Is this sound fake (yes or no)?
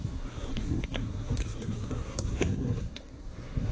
yes